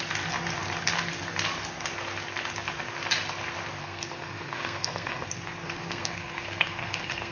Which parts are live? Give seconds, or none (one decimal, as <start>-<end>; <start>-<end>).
0.0-3.8